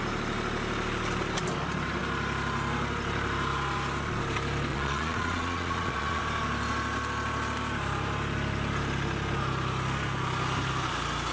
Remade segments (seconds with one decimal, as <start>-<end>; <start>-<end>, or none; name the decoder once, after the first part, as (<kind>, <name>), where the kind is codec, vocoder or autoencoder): 4.7-6.2 (vocoder, Vocos)